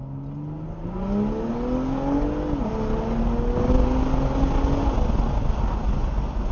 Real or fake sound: real